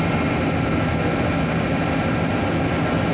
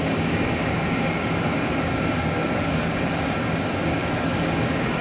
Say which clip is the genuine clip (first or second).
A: first